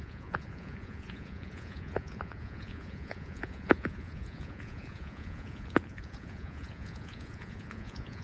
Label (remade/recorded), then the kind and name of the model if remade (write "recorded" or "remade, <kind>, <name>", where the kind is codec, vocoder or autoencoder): remade, vocoder, Vocos